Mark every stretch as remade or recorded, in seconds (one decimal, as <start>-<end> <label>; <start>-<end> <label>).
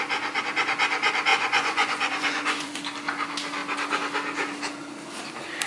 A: 0.0-1.3 recorded; 1.3-2.8 remade; 2.8-5.7 recorded